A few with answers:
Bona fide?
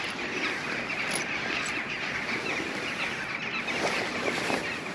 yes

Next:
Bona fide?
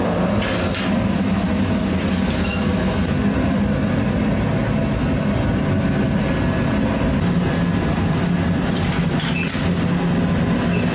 yes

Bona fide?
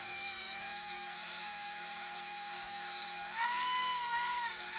no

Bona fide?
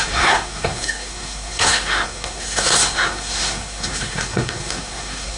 no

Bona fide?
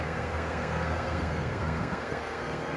no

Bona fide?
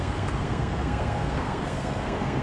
no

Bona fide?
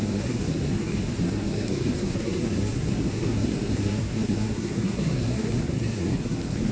no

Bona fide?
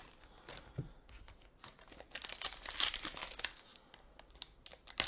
yes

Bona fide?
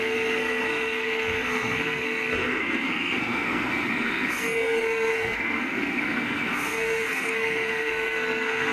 no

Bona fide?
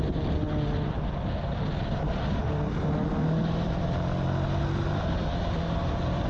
yes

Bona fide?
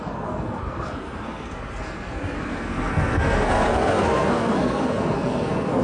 no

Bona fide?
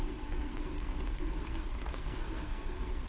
no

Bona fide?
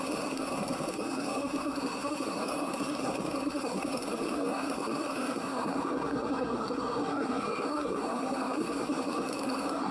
no